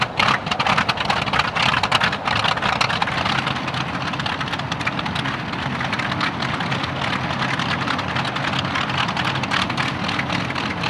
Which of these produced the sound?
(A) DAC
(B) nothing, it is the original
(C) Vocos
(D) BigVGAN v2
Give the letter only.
B